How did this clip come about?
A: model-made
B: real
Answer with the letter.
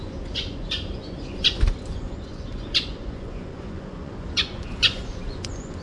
A